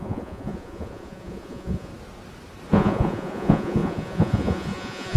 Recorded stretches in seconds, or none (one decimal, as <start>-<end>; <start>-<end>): 1.9-2.7